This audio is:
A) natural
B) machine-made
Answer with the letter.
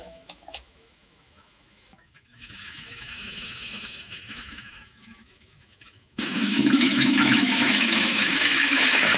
B